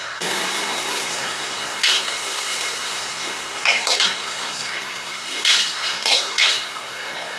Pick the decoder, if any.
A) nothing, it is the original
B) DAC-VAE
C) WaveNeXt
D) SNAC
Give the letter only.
D